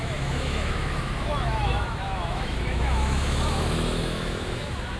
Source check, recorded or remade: remade